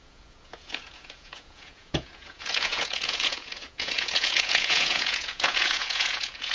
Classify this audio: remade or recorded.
remade